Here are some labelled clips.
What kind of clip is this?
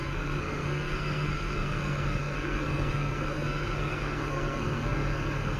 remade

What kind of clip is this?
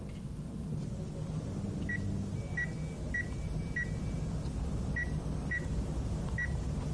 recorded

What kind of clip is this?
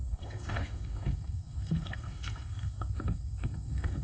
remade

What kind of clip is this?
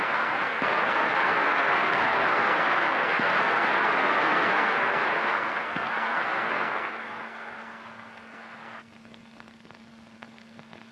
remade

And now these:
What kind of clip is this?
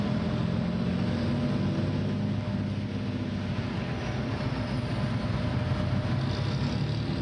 recorded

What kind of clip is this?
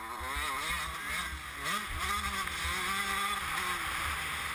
recorded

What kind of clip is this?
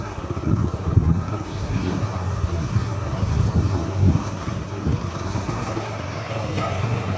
remade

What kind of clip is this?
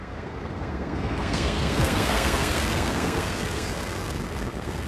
remade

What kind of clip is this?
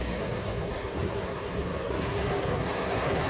remade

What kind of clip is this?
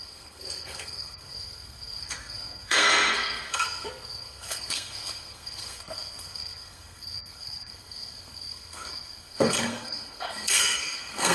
remade